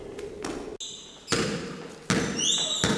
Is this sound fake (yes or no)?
no